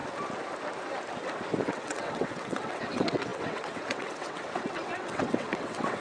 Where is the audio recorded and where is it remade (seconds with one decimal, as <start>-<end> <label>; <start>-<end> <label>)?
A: 0.0-1.6 recorded; 1.6-6.0 remade